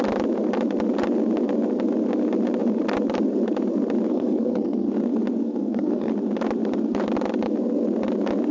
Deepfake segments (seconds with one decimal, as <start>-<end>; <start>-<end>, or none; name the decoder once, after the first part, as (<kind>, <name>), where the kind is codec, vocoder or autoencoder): 4.1-4.9 (codec, SNAC); 5.4-6.1